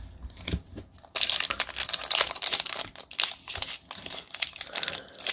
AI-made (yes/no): no